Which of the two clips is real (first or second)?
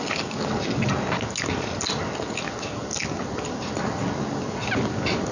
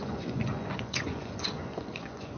first